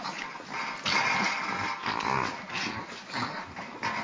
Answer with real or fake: real